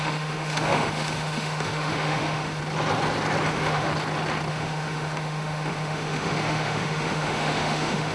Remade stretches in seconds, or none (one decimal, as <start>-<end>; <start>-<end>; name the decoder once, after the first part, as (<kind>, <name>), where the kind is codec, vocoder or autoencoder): 0.0-2.6 (autoencoder, DAC-VAE); 3.5-3.9; 4.5-8.1